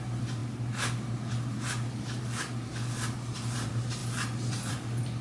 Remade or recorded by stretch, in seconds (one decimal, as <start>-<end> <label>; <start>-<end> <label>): 0.0-5.2 recorded